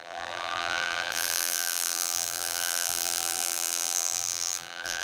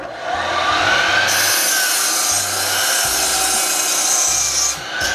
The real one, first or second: second